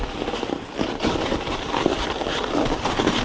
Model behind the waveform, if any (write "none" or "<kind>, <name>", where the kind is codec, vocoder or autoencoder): none